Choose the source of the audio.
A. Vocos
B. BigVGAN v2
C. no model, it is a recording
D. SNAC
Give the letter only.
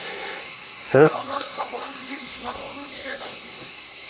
D